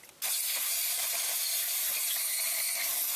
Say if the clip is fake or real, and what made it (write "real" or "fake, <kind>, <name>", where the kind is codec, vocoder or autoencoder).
real